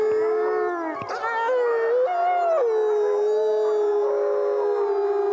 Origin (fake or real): real